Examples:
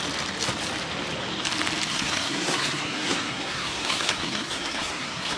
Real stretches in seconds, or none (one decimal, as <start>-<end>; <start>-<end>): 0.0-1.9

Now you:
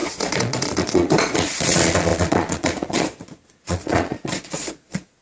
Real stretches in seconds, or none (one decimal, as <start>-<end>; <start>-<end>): none

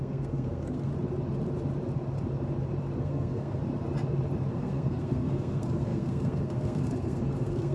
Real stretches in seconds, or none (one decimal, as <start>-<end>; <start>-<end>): 0.9-3.0; 3.6-4.5